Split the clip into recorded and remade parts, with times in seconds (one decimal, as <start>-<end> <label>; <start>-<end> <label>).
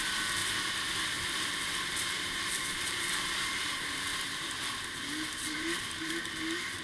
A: 0.0-0.4 remade; 0.4-1.8 recorded; 1.8-4.1 remade; 4.1-4.7 recorded; 4.7-6.8 remade